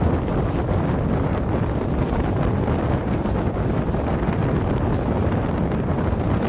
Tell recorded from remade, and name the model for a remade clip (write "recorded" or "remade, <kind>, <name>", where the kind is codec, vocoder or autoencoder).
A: recorded